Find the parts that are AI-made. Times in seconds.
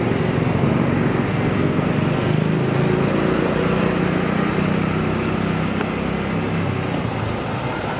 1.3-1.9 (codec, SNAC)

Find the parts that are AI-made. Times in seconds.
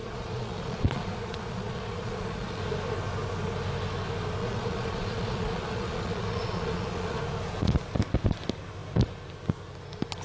0.0-2.6 (vocoder, Vocos); 4.4-7.2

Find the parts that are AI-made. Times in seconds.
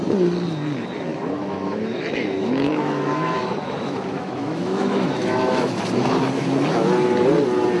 1.1-5.8 (autoencoder, DAC-VAE)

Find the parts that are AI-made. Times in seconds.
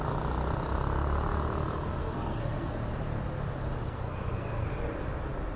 2.0-2.7 (codec, SNAC); 3.8-4.7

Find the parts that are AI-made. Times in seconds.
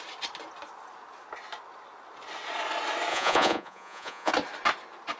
3.1-4.3 (vocoder, Vocos)